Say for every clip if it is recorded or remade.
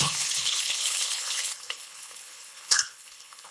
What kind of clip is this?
remade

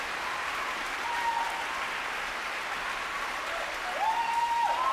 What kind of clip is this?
recorded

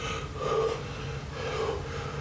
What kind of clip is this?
recorded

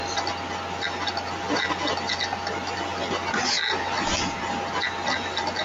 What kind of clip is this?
recorded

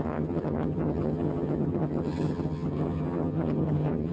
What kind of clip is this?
remade